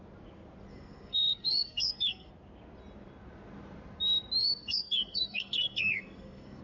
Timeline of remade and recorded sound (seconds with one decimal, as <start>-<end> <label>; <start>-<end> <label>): 0.0-0.7 recorded; 0.7-2.3 remade; 2.3-4.4 recorded; 4.4-6.6 remade